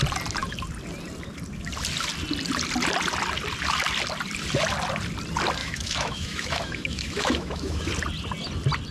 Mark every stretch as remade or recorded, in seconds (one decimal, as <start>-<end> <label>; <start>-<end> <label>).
0.0-5.6 recorded; 5.6-7.9 remade; 7.9-8.9 recorded